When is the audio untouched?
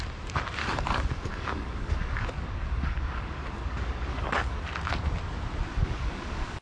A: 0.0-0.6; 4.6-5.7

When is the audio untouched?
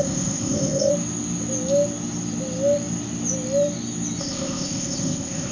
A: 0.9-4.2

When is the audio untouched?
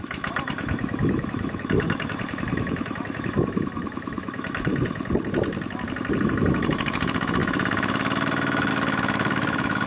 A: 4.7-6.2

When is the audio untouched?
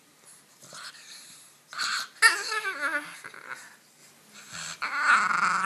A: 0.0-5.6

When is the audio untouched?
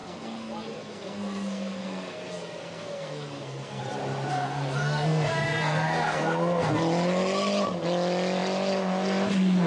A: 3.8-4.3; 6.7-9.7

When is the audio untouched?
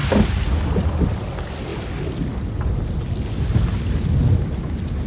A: 0.9-5.1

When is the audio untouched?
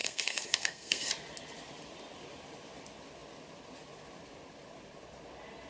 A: 1.1-5.7